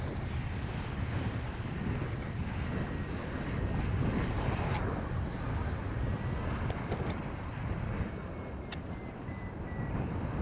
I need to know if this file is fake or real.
real